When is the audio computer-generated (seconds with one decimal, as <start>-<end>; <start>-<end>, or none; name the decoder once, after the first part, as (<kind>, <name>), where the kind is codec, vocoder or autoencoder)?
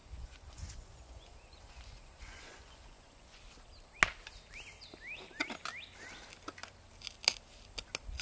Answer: 0.0-3.4 (vocoder, Vocos)